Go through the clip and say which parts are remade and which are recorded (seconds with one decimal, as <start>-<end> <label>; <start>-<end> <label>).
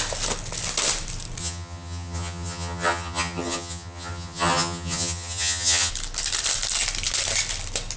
0.0-1.4 recorded; 1.4-5.9 remade; 5.9-8.0 recorded